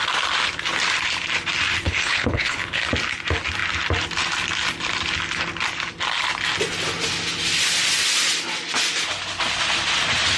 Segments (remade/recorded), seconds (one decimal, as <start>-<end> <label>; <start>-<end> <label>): 0.0-1.8 recorded; 1.8-2.8 remade; 2.8-10.4 recorded